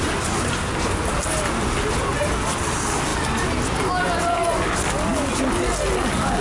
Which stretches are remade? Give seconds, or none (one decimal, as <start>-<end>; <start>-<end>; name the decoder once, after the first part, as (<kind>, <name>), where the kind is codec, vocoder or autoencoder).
none